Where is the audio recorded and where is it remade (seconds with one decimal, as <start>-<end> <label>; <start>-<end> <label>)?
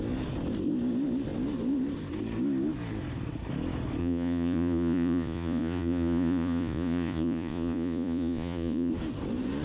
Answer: 0.0-4.0 recorded; 4.0-8.9 remade; 8.9-9.6 recorded